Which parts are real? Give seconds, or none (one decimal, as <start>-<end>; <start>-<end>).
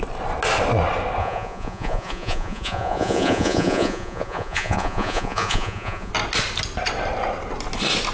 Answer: 0.0-1.2; 6.1-8.1